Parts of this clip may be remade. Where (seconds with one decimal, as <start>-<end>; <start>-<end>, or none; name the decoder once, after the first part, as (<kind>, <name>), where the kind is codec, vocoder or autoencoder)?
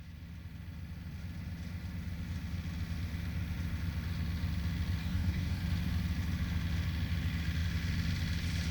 5.0-5.6 (codec, DAC)